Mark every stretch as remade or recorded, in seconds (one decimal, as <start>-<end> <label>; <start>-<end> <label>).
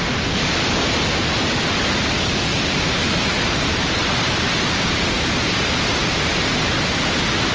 0.0-2.5 recorded; 2.5-3.9 remade; 3.9-6.3 recorded; 6.3-7.5 remade